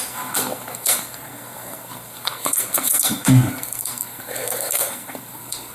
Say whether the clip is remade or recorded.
remade